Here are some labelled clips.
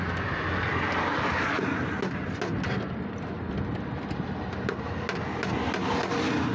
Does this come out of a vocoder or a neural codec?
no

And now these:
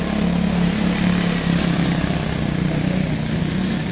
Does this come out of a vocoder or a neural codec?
no